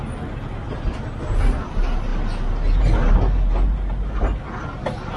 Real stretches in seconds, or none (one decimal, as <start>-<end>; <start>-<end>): 0.0-5.2